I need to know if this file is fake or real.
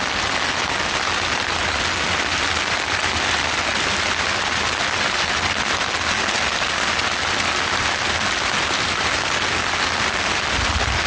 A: real